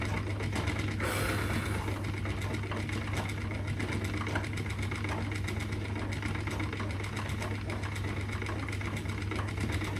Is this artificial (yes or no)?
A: no